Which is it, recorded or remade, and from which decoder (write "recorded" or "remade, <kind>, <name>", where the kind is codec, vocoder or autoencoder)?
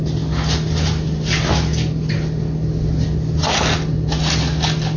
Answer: recorded